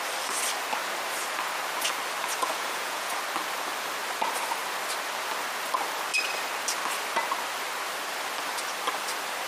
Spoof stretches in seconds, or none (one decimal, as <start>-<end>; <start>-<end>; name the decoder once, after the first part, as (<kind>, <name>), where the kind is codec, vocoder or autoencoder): 2.4-3.2 (vocoder, Vocos)

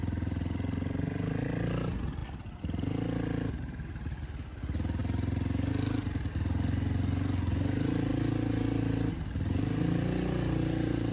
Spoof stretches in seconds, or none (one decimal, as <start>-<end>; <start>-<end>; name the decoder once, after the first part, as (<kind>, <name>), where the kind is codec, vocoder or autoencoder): none

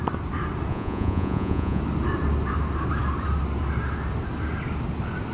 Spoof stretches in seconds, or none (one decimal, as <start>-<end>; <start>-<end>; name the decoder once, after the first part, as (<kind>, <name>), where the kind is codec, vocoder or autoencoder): 0.7-1.8 (vocoder, Vocos)

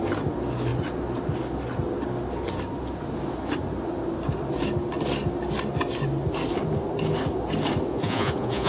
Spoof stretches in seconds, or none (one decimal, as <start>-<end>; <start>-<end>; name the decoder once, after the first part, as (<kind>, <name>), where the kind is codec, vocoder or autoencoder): 7.9-8.7 (vocoder, Vocos)

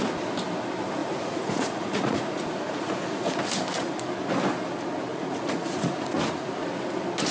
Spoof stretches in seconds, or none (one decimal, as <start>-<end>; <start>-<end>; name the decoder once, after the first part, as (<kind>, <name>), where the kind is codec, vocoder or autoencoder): 1.0-3.4 (vocoder, Vocos); 5.1-6.5

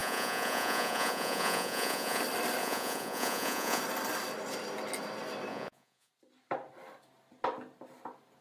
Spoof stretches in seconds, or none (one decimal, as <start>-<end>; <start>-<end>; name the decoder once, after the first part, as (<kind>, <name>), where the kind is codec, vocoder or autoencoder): 0.0-2.2 (vocoder, Vocos); 2.6-3.8; 5.5-6.1